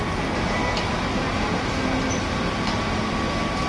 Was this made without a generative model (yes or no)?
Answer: yes